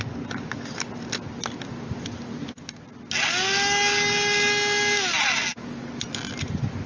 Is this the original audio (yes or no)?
yes